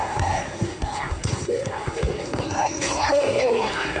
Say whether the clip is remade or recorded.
remade